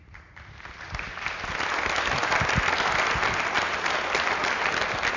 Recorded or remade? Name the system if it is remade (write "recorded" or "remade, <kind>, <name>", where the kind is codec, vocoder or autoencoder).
recorded